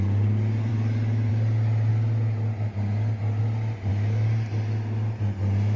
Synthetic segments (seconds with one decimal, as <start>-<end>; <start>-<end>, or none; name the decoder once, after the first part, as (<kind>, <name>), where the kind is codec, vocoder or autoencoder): 0.7-1.3 (codec, DAC)